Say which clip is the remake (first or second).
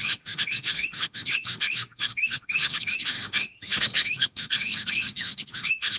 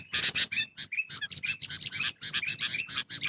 first